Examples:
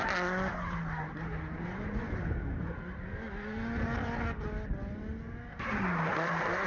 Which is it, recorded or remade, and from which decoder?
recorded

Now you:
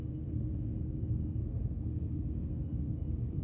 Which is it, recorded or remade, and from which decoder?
remade, codec, SNAC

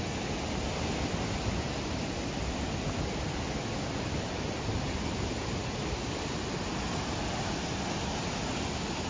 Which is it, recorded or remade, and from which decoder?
recorded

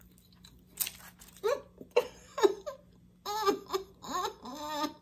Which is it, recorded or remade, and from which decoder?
recorded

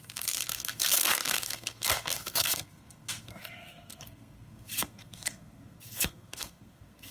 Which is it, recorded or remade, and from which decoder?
remade, codec, SNAC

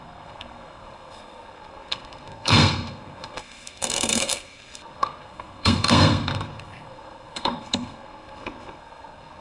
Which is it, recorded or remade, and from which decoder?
remade, codec, SNAC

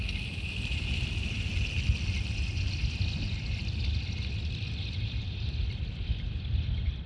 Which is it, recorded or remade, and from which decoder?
recorded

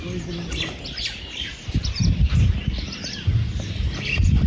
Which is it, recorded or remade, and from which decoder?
recorded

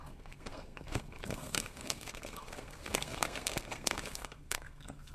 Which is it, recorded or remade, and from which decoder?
remade, codec, SNAC